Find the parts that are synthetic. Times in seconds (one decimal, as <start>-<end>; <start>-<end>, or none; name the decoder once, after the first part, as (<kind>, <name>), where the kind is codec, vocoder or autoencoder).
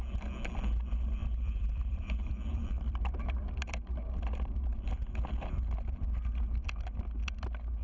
1.2-4.7 (vocoder, BigVGAN v2)